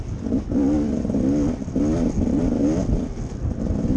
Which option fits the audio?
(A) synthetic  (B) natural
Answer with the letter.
B